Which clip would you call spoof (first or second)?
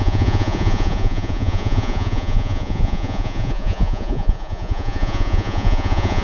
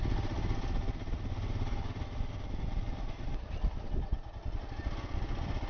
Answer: first